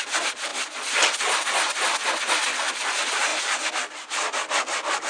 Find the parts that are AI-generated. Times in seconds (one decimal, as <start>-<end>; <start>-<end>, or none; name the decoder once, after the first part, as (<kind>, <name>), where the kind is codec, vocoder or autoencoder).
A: none